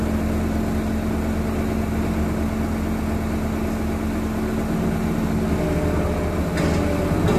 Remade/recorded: recorded